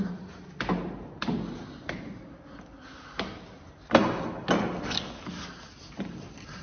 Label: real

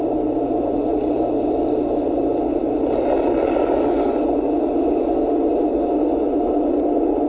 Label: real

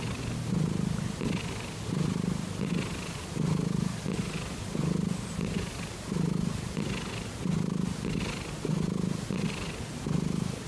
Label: real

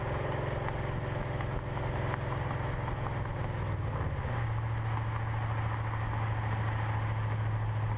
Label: real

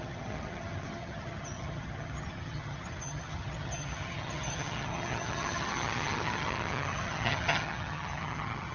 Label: fake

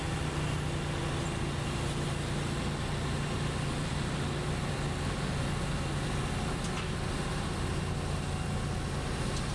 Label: real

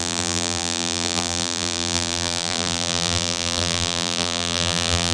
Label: fake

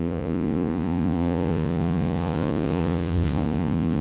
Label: fake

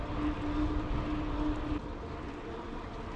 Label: real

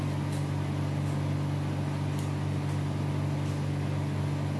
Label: real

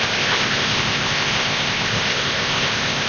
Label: fake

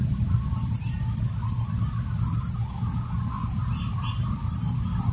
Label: real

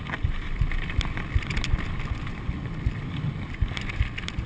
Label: real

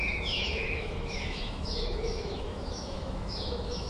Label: fake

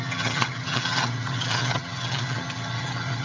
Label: fake